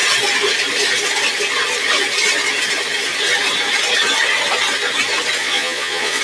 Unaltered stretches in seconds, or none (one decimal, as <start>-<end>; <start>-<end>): 0.0-5.4